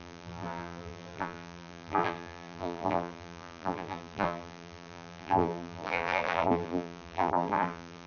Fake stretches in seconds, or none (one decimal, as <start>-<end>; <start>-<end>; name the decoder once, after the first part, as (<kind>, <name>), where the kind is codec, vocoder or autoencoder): 0.0-8.1 (vocoder, BigVGAN v2)